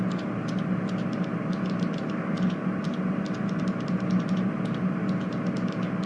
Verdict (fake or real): real